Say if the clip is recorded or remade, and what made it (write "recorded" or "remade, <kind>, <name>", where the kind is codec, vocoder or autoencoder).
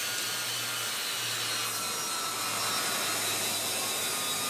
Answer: recorded